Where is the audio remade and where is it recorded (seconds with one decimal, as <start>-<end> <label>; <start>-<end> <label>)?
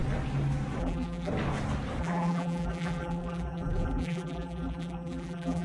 0.0-0.8 recorded; 0.8-1.3 remade; 1.3-2.0 recorded; 2.0-5.6 remade